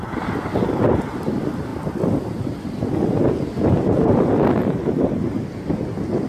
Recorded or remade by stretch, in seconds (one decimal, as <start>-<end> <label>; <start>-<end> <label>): 0.0-6.3 recorded